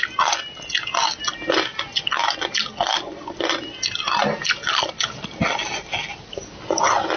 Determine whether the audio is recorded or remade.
recorded